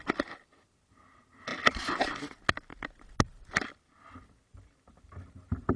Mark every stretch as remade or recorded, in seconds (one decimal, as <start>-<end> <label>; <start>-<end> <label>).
0.0-5.8 recorded